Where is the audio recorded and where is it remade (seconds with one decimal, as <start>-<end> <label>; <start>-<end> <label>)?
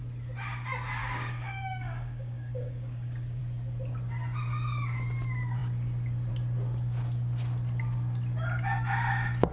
0.0-1.0 recorded; 1.0-3.4 remade; 3.4-9.5 recorded